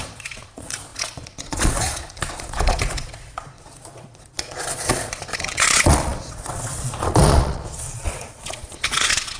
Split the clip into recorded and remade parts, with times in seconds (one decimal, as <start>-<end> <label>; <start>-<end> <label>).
0.0-9.4 remade